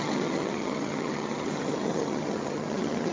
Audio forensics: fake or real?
fake